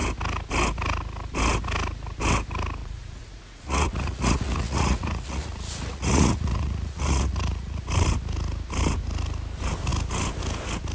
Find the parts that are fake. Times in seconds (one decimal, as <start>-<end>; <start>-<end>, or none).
2.8-7.8